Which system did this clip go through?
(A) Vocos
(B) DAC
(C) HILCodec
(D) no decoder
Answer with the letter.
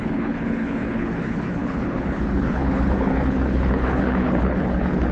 C